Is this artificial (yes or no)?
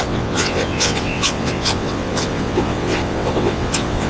yes